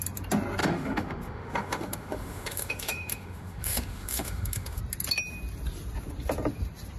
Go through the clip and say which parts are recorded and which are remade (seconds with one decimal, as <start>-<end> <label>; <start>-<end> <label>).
0.0-0.6 recorded; 0.6-4.8 remade; 4.8-7.0 recorded